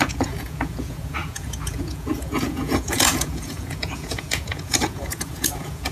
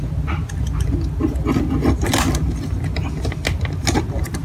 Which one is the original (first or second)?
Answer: second